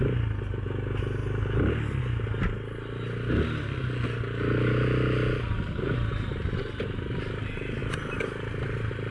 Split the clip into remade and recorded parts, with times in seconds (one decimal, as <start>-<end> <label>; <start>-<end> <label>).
0.0-9.1 recorded